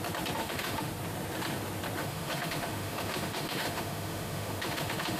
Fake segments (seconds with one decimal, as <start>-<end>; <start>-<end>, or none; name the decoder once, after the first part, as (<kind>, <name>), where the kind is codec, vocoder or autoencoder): 0.4-0.9 (autoencoder, DAC-VAE); 2.0-5.2